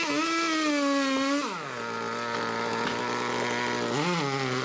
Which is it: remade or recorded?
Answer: recorded